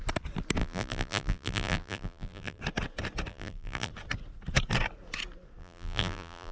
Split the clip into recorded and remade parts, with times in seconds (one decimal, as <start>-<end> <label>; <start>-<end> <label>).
0.0-0.6 recorded; 0.6-2.6 remade; 2.6-3.3 recorded; 3.3-3.9 remade; 3.9-5.6 recorded; 5.6-6.5 remade